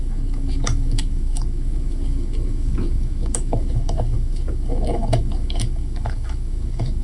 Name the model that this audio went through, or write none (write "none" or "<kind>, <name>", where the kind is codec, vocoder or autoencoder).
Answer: codec, DAC